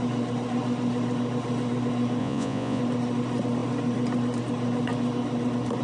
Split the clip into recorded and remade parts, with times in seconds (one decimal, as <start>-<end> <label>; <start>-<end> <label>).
0.0-2.2 recorded; 2.2-2.8 remade; 2.8-5.8 recorded